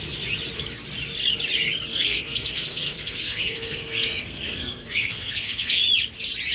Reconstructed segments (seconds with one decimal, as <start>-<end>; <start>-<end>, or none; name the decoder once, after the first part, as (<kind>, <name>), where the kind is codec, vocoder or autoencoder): 1.9-5.8 (codec, SNAC)